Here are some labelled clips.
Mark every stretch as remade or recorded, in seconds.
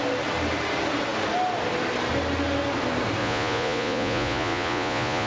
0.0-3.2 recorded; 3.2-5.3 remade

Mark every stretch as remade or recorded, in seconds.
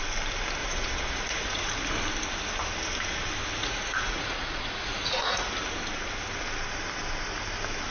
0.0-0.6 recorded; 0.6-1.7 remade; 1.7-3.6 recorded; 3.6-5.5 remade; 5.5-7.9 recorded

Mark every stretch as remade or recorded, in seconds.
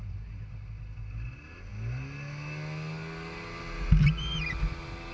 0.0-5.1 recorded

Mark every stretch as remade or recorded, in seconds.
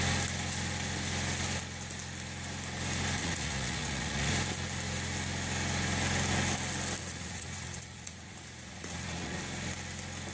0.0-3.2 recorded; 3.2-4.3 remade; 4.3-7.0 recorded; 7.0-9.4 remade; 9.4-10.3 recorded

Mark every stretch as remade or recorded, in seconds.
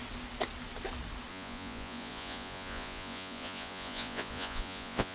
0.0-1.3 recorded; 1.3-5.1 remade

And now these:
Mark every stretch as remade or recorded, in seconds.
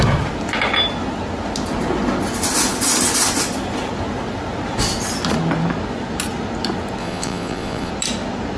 0.0-7.0 recorded; 7.0-7.9 remade; 7.9-8.6 recorded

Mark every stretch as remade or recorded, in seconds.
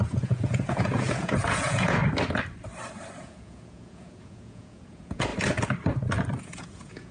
0.0-2.0 remade; 2.0-3.2 recorded; 3.2-5.3 remade; 5.3-6.4 recorded; 6.4-7.1 remade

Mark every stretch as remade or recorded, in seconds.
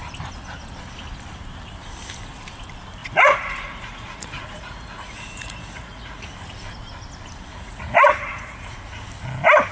0.0-3.0 recorded; 3.0-6.3 remade; 6.3-7.5 recorded; 7.5-9.0 remade; 9.0-9.7 recorded